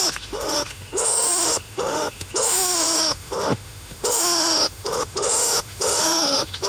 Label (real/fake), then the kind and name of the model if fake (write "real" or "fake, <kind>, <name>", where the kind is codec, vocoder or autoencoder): fake, autoencoder, DAC-VAE